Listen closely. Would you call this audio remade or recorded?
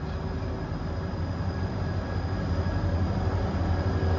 recorded